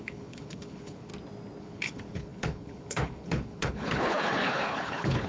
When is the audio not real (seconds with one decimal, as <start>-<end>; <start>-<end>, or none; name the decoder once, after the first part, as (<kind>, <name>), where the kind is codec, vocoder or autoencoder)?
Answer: 0.0-1.1 (codec, HILCodec); 1.6-5.3